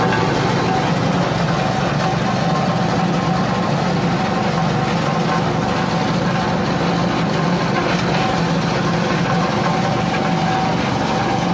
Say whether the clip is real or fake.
real